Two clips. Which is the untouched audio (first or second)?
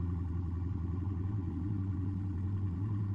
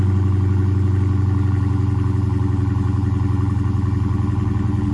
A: second